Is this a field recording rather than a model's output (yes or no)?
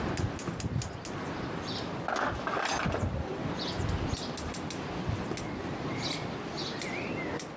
yes